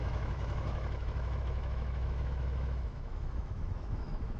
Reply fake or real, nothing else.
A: fake